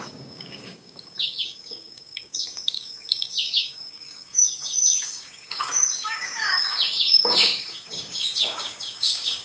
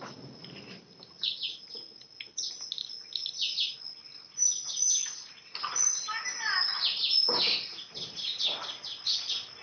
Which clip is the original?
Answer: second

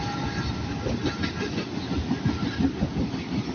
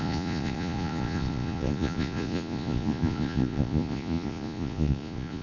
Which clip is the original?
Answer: first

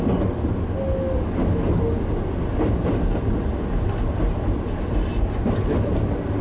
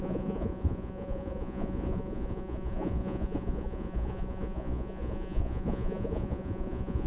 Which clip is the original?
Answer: first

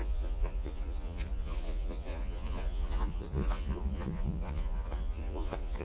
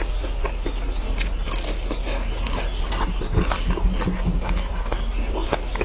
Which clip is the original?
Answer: second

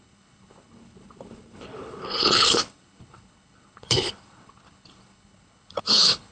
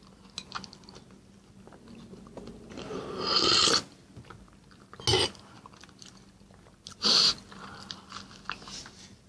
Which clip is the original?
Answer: second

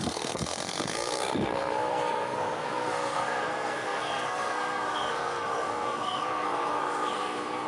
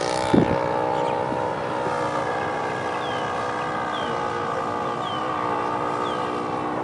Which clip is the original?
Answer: second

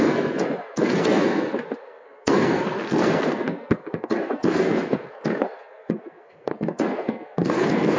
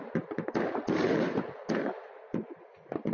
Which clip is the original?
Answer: second